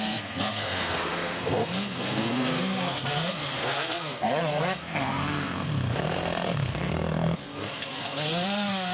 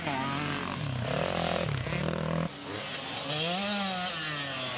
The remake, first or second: first